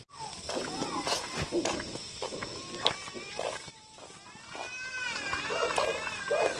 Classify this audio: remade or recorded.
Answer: recorded